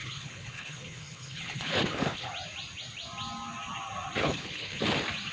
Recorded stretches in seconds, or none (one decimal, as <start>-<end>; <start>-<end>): 2.3-4.2; 4.8-5.3